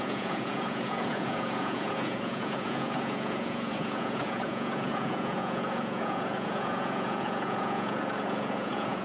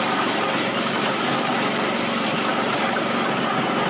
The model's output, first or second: first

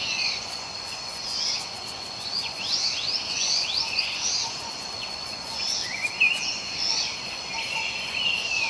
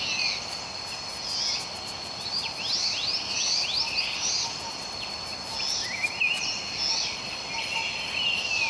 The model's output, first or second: first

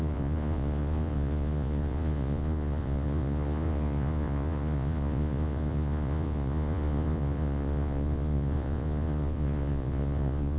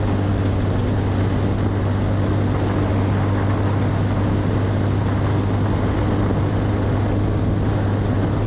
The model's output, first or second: first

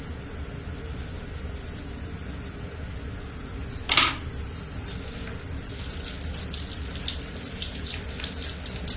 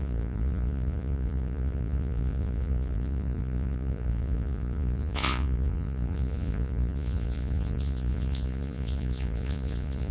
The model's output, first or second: second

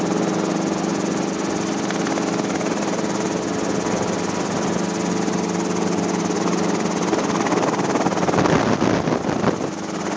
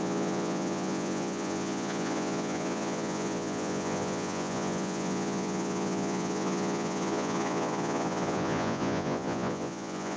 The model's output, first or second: second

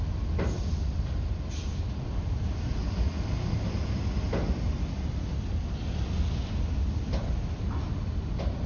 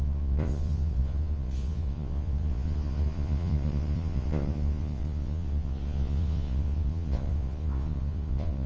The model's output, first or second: second